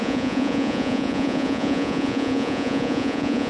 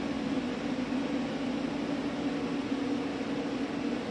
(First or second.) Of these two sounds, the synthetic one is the first